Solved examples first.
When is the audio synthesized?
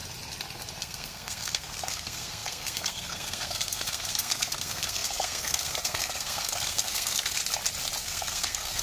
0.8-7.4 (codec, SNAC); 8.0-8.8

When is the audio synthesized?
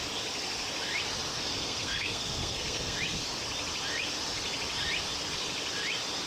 1.3-3.0 (codec, SNAC)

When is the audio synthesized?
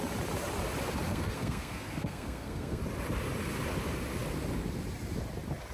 1.1-2.8 (codec, SNAC)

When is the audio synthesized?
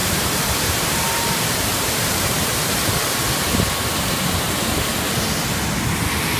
0.0-3.1 (vocoder, BigVGAN v2)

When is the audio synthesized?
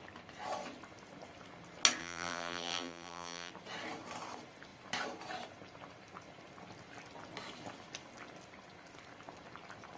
2.0-3.5 (vocoder, BigVGAN v2)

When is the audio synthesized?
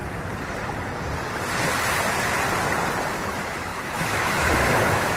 3.1-5.2 (autoencoder, DAC-VAE)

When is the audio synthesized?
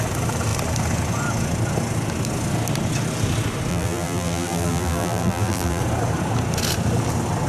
3.7-5.8 (vocoder, BigVGAN v2)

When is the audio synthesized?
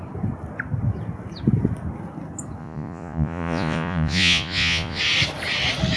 2.6-5.0 (vocoder, Vocos)